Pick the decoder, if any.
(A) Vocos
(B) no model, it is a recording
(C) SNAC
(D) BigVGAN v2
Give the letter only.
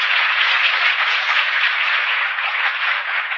A